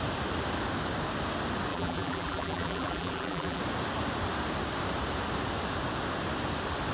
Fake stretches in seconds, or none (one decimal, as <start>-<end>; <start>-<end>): 1.7-3.6